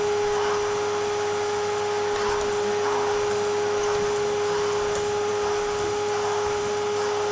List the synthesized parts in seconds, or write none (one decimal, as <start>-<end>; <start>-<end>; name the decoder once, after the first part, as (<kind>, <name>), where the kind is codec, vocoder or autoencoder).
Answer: none